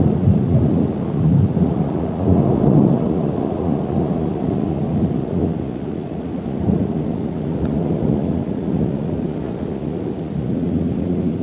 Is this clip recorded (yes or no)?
no